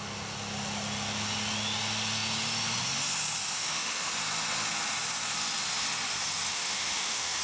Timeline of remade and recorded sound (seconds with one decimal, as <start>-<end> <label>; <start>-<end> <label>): 0.0-3.4 recorded; 3.4-4.1 remade; 4.1-6.5 recorded; 6.5-7.4 remade